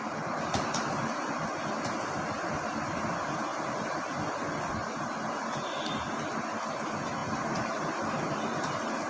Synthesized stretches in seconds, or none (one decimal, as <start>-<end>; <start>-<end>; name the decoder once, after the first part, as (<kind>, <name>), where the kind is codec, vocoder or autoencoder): none